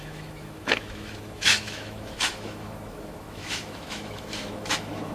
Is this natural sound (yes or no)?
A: no